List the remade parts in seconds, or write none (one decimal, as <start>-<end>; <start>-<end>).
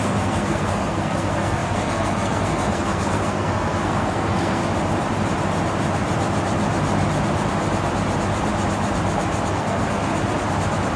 0.0-4.6; 9.5-10.1